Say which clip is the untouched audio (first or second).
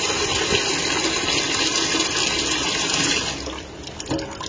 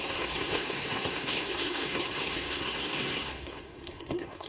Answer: first